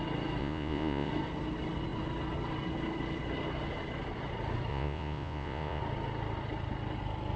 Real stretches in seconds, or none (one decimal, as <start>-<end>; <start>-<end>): 0.0-0.4; 1.1-4.7; 5.8-7.4